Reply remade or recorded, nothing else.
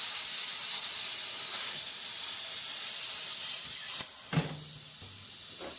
recorded